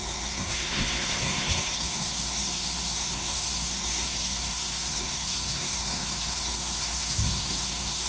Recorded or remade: remade